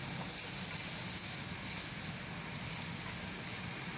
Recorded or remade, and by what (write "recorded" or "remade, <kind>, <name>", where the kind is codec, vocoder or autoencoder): recorded